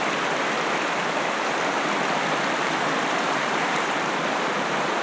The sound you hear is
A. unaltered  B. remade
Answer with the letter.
B